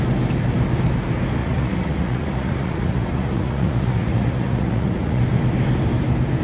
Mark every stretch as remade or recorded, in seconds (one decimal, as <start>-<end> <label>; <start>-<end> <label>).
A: 0.0-1.4 recorded; 1.4-5.2 remade; 5.2-6.4 recorded